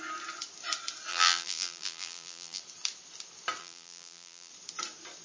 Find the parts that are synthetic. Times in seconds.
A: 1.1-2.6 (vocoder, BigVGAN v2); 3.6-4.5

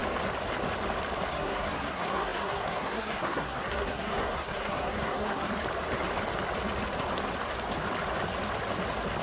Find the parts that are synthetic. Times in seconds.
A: 1.3-5.5 (codec, SNAC)

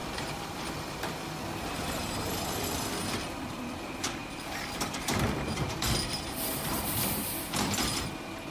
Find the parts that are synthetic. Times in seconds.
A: 0.0-8.5 (vocoder, BigVGAN v2)

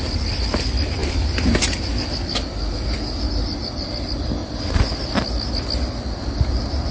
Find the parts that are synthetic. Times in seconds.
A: 0.0-1.0 (vocoder, BigVGAN v2); 3.3-4.4

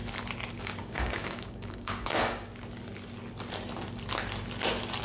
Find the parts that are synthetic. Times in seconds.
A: 0.6-2.5 (codec, DAC)

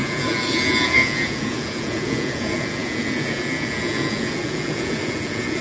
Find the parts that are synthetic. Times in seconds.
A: 0.0-5.6 (vocoder, Vocos)

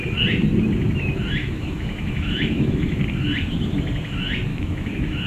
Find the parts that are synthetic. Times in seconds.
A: 1.4-3.0 (autoencoder, DAC-VAE); 4.5-5.3